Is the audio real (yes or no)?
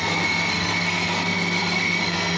no